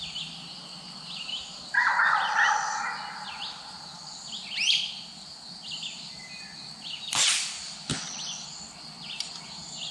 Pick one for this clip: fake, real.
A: real